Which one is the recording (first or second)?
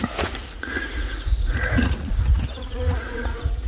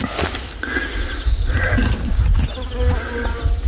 second